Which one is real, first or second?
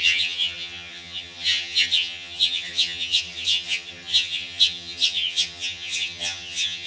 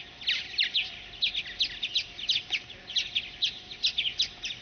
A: second